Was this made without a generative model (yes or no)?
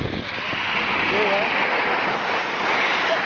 yes